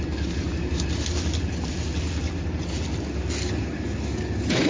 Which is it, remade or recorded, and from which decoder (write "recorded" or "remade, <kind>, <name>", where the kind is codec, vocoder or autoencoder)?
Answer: recorded